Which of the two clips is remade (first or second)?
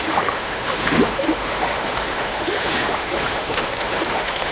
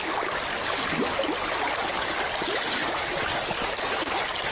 first